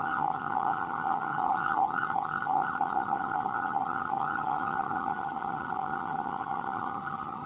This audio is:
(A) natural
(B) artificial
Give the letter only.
B